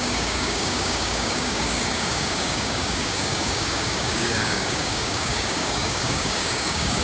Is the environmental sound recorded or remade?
remade